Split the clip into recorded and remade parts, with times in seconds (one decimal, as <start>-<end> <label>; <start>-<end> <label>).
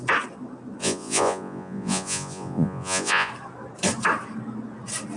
0.0-0.8 recorded; 0.8-3.3 remade; 3.3-5.2 recorded